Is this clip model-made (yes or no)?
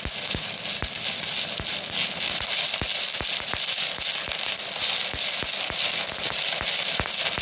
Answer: no